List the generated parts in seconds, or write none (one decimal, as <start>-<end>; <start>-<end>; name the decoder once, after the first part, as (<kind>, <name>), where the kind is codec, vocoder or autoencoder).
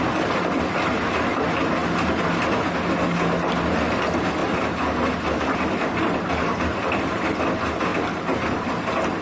none